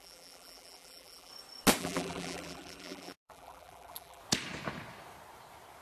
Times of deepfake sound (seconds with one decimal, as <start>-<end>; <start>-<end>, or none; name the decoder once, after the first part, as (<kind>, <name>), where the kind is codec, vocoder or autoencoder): 0.0-1.3 (vocoder, BigVGAN v2); 1.8-4.2